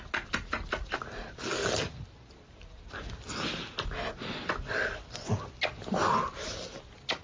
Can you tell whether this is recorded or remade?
recorded